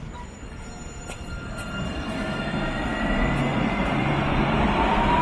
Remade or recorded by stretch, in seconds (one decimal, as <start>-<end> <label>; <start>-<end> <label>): 0.0-3.5 recorded; 3.5-4.4 remade; 4.4-5.2 recorded